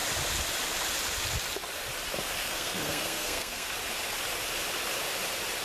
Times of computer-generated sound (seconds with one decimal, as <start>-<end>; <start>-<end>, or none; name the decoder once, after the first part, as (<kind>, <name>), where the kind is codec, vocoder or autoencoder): 2.4-3.7 (codec, SNAC)